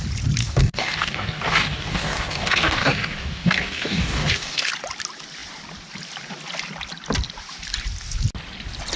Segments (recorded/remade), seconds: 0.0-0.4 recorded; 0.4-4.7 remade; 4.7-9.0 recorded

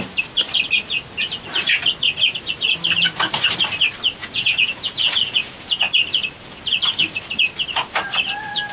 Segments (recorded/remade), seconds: 0.0-4.2 recorded; 4.2-5.8 remade; 5.8-8.7 recorded

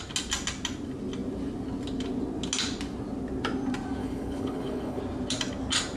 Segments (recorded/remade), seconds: 0.0-4.0 recorded; 4.0-5.0 remade; 5.0-6.0 recorded